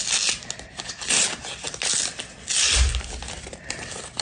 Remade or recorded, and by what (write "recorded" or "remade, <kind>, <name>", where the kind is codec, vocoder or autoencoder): recorded